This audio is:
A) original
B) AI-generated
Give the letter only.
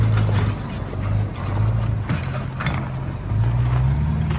A